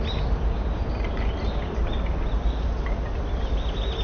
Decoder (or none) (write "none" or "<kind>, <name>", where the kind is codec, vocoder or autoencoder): none